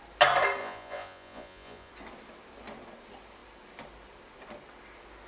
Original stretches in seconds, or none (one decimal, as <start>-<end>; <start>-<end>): 0.0-0.6; 1.9-5.3